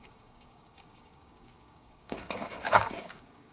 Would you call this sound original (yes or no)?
no